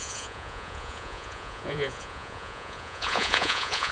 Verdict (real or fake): fake